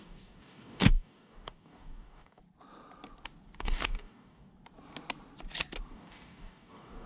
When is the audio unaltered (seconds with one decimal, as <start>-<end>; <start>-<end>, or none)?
2.4-3.6; 4.5-5.9